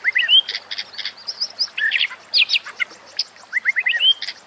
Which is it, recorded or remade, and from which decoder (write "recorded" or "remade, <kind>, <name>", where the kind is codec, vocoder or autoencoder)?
recorded